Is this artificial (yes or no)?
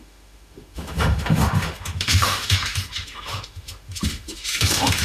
yes